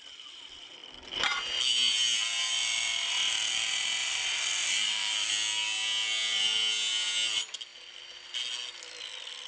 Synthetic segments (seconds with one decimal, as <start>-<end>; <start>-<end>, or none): 4.0-5.3